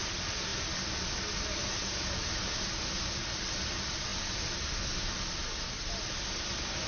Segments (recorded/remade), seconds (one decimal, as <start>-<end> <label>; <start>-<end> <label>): 0.0-4.1 recorded; 4.1-4.7 remade; 4.7-6.9 recorded